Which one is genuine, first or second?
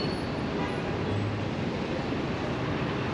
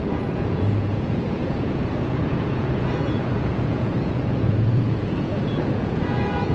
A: first